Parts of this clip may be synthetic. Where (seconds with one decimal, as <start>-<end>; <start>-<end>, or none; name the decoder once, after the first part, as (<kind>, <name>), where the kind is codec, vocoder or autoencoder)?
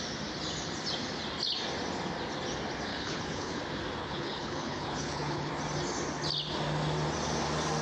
2.9-3.6 (codec, HILCodec); 4.0-5.5